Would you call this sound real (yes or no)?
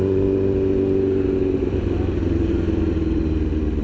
yes